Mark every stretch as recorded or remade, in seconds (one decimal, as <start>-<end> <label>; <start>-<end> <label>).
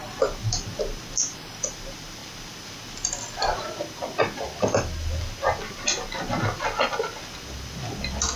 0.0-8.4 recorded